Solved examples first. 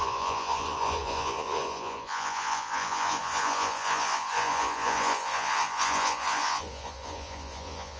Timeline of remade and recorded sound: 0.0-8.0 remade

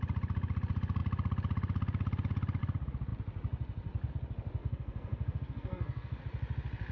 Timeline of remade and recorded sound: 0.0-4.6 recorded; 4.6-6.2 remade; 6.2-6.9 recorded

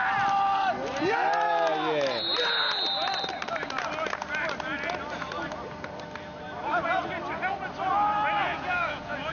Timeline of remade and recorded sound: 0.0-8.4 recorded; 8.4-9.3 remade

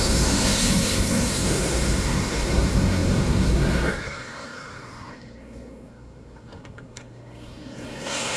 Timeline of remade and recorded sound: 0.0-8.4 remade

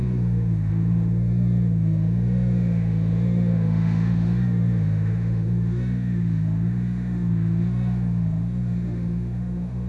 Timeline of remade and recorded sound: 0.0-9.9 remade

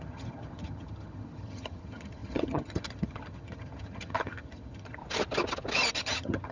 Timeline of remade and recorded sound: 0.0-5.0 remade; 5.0-5.9 recorded; 5.9-6.5 remade

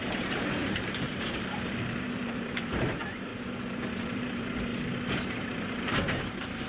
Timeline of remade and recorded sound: 0.0-3.3 remade; 3.3-4.0 recorded; 4.0-4.7 remade; 4.7-5.3 recorded; 5.3-6.7 remade